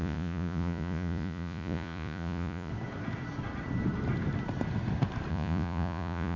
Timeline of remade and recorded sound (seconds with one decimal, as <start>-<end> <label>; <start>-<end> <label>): 0.0-2.7 remade; 2.7-5.3 recorded; 5.3-6.4 remade

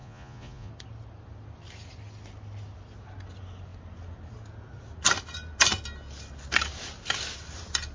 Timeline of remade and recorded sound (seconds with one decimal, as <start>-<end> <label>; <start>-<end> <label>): 0.0-0.7 remade; 0.7-7.9 recorded